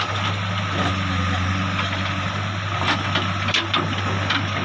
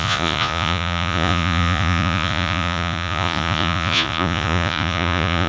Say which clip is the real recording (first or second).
first